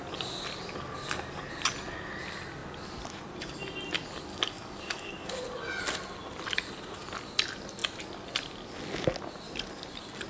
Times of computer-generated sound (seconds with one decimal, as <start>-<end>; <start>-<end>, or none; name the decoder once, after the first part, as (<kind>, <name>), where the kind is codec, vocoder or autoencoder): 4.3-5.3 (codec, DAC)